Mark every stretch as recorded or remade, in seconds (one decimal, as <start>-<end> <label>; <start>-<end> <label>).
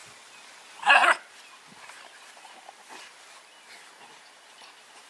0.0-5.1 recorded